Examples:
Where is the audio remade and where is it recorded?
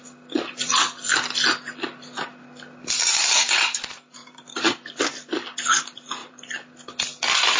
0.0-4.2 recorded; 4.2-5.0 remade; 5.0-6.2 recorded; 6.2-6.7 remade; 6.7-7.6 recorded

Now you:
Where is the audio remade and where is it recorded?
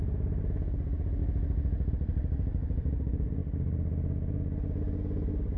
0.0-1.2 remade; 1.2-1.9 recorded; 1.9-3.4 remade; 3.4-5.6 recorded